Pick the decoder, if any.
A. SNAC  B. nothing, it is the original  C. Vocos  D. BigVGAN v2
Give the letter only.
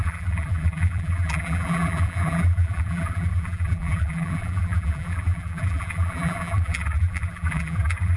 D